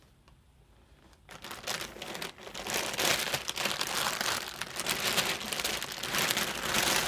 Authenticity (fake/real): real